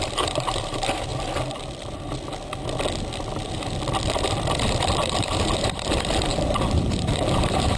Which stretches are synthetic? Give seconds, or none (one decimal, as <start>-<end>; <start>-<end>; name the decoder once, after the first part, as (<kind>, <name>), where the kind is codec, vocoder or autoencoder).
0.0-1.1 (vocoder, BigVGAN v2); 5.1-7.8